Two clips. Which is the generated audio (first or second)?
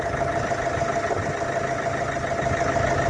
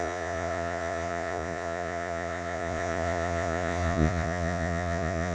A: second